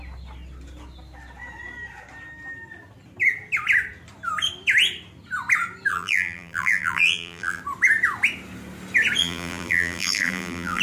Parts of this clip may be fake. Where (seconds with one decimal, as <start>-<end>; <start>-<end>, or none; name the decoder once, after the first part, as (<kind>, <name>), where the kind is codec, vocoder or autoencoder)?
5.9-7.6 (vocoder, BigVGAN v2); 9.2-10.8